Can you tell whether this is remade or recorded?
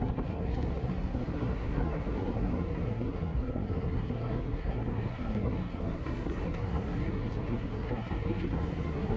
remade